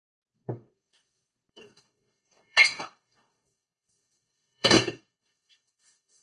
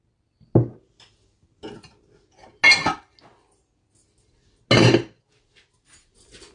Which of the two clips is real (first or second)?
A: second